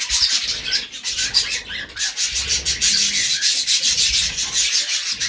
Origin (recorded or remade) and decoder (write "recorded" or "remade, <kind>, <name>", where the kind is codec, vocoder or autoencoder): recorded